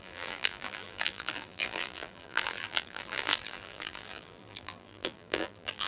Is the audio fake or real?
fake